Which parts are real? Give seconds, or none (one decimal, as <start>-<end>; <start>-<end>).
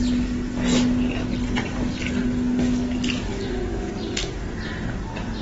0.0-3.3; 3.9-5.4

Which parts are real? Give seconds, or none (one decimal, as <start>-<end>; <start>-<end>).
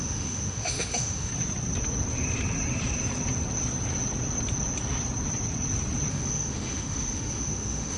1.3-6.1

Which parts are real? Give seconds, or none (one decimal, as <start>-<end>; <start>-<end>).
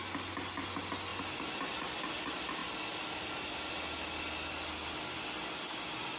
0.0-6.2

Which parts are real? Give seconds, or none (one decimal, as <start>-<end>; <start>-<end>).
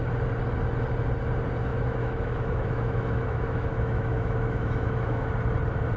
0.0-1.7; 5.3-6.0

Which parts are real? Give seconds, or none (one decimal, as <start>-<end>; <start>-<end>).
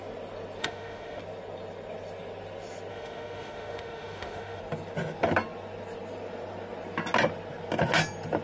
0.0-0.6; 1.2-2.9; 4.6-8.4